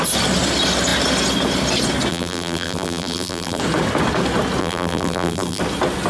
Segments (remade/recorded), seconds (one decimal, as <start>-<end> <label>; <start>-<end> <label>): 0.0-2.1 recorded; 2.1-3.6 remade; 3.6-4.6 recorded; 4.6-5.6 remade; 5.6-6.1 recorded